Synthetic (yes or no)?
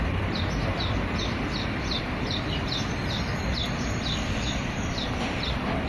yes